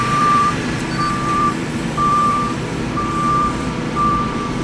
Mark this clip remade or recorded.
remade